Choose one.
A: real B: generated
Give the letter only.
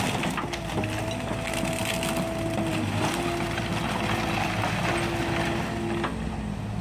A